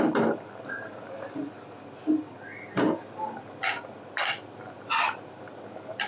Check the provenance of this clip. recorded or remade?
recorded